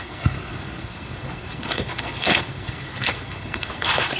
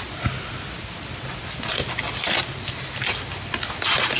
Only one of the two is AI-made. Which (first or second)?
first